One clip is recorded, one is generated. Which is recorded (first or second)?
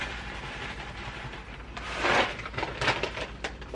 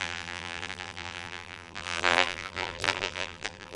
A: first